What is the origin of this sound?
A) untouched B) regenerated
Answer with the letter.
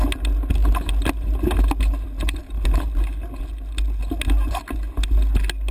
A